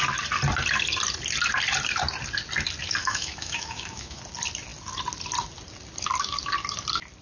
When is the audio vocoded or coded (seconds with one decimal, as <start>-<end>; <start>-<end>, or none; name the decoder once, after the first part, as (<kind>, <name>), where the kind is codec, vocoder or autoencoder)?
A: 3.0-4.2 (autoencoder, DAC-VAE)